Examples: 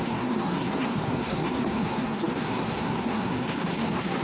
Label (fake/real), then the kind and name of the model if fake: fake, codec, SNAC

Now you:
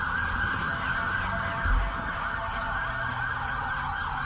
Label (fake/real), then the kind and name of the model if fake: real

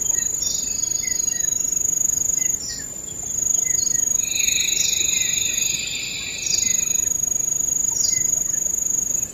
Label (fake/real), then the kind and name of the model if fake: real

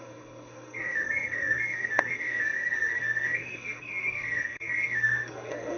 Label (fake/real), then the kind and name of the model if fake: fake, codec, SNAC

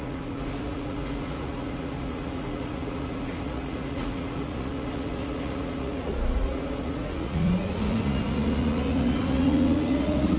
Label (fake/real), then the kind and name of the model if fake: fake, vocoder, Vocos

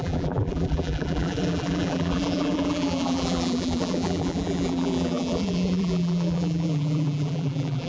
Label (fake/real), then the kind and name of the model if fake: fake, vocoder, BigVGAN v2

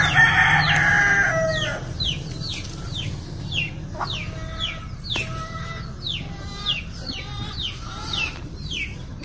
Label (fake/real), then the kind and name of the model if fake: real